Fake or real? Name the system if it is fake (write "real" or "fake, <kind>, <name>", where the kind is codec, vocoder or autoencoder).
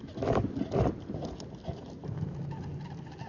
real